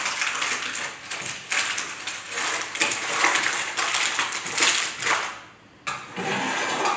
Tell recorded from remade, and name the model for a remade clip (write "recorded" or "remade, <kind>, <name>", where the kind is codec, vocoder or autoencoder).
recorded